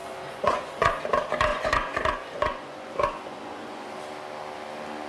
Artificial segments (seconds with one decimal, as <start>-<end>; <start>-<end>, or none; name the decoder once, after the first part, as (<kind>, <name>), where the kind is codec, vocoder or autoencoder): 0.0-1.0 (vocoder, Vocos); 1.5-4.0